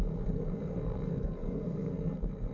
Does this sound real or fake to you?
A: fake